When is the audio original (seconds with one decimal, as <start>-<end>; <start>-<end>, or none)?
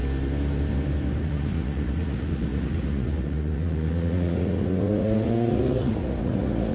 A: 0.0-1.2